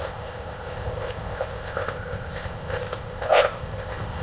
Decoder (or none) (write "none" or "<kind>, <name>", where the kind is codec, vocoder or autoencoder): codec, ZipCodec